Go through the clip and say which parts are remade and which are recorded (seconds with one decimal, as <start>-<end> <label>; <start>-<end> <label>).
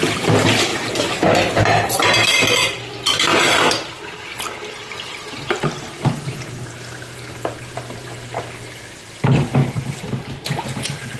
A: 0.0-0.7 recorded; 0.7-2.4 remade; 2.4-3.3 recorded; 3.3-8.1 remade; 8.1-9.6 recorded; 9.6-11.2 remade